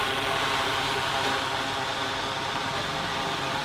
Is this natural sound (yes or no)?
yes